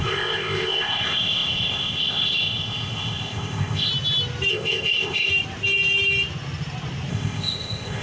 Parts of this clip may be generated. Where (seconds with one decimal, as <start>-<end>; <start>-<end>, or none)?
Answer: 0.0-3.9; 4.5-5.3; 7.1-8.0